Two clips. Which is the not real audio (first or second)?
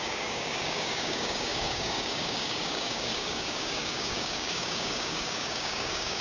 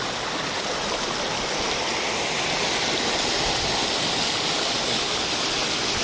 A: first